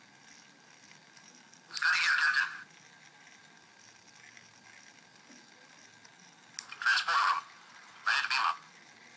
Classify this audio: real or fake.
real